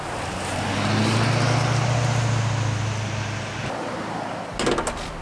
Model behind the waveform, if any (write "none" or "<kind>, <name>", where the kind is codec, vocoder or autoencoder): none